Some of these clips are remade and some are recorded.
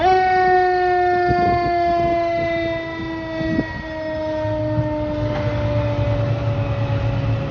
recorded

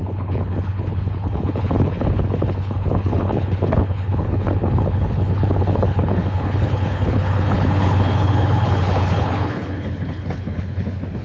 remade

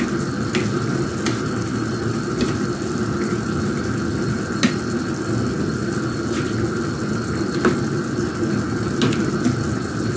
recorded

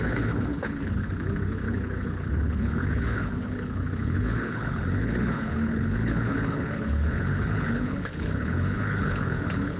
remade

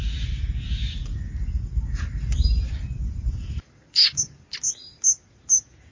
recorded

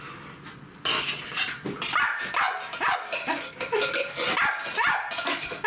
recorded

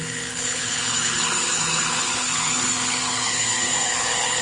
remade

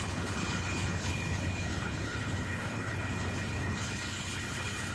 remade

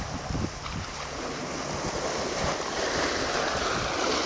recorded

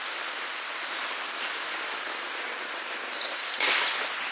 recorded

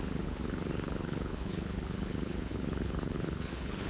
remade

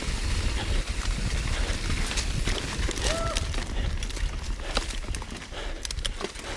recorded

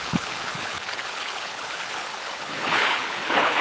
remade